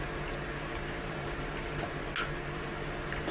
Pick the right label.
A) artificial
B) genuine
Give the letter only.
B